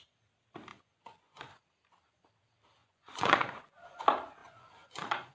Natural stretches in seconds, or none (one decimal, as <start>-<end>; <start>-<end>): 0.0-0.7; 1.5-2.8; 4.0-4.4